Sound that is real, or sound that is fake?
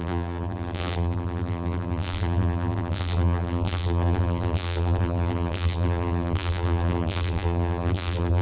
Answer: fake